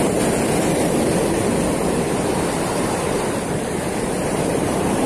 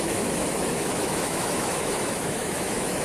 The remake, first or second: second